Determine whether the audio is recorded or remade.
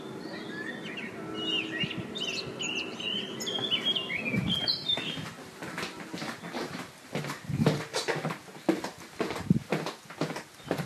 recorded